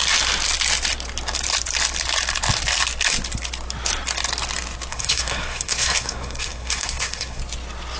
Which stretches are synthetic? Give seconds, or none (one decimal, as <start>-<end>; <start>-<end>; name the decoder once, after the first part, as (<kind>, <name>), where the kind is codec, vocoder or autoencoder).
4.9-7.4 (codec, SNAC)